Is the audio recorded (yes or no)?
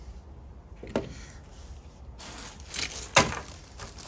yes